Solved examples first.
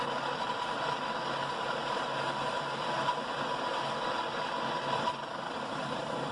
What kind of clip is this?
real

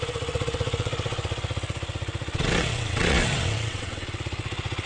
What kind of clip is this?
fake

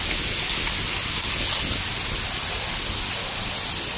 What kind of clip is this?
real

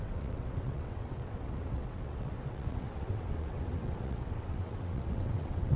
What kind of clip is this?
fake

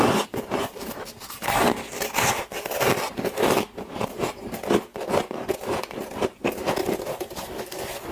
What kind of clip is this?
real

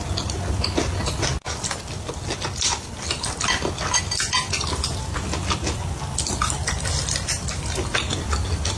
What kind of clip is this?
real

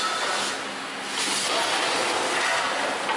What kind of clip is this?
real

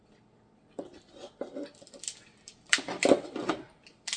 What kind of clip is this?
real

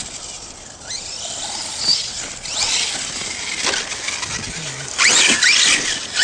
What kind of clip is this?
real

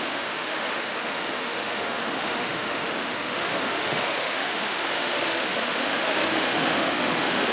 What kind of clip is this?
fake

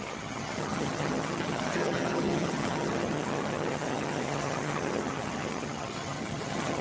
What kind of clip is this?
fake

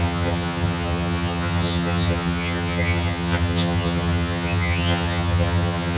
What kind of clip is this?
fake